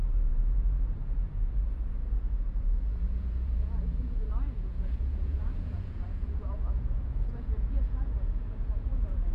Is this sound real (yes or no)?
no